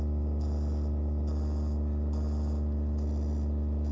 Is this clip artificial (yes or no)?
no